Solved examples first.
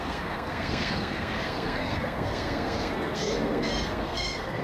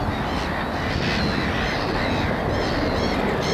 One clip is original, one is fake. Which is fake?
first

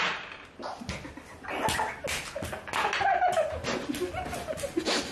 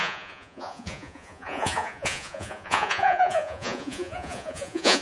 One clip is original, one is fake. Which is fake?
second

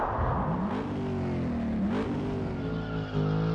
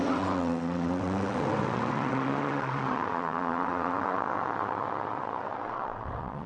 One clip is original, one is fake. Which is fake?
second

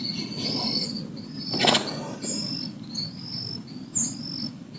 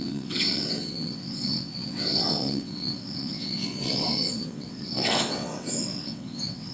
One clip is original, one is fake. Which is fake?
second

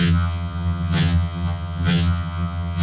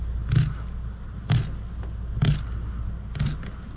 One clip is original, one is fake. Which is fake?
first